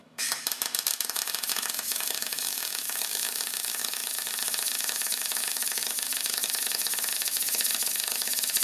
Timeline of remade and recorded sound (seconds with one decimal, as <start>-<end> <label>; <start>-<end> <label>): 0.0-8.6 remade